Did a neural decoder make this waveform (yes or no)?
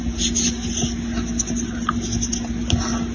no